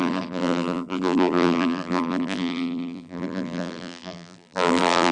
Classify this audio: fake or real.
fake